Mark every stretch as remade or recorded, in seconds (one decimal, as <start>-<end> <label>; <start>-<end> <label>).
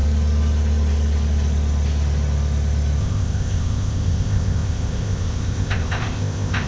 0.0-3.0 recorded; 3.0-6.7 remade